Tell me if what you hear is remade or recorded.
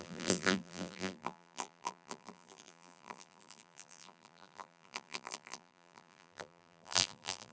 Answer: remade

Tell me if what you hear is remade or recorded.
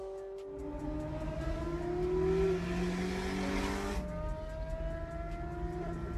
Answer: recorded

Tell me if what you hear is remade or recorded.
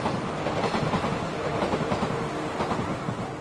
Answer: recorded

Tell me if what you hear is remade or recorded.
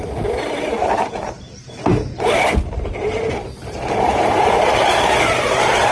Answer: remade